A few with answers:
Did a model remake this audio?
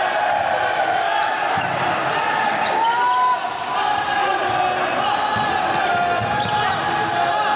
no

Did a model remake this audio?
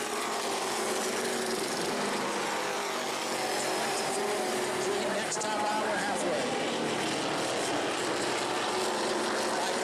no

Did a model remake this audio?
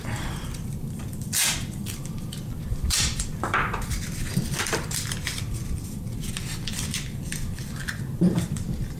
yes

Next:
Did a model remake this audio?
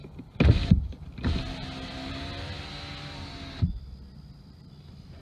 no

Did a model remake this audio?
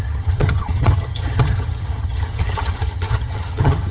yes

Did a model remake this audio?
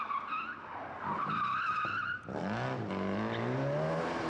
no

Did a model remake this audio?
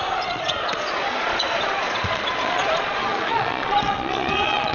yes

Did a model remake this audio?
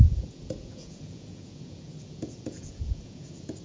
yes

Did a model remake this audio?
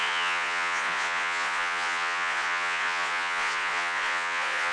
yes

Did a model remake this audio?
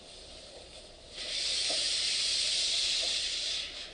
no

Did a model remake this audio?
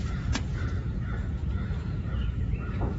yes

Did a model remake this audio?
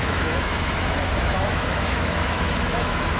yes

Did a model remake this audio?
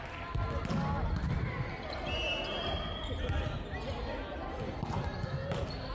no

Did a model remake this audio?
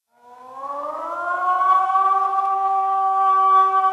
yes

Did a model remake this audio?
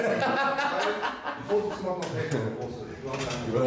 no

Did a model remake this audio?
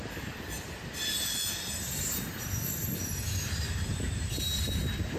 no